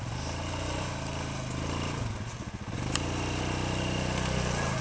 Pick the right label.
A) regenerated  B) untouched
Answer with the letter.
B